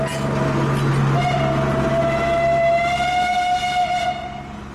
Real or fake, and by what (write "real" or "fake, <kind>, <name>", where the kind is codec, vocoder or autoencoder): real